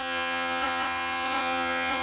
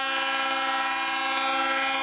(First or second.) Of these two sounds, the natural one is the second